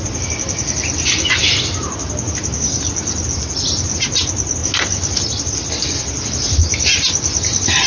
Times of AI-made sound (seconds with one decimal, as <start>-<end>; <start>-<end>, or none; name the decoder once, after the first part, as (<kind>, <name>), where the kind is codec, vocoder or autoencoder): none